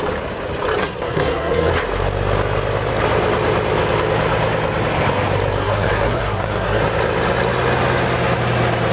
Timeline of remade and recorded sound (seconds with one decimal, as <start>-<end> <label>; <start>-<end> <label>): 0.0-0.8 recorded; 0.8-1.7 remade; 1.7-5.6 recorded; 5.6-6.8 remade; 6.8-8.9 recorded